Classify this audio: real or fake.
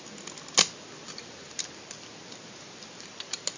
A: real